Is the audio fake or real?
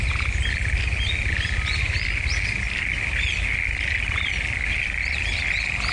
real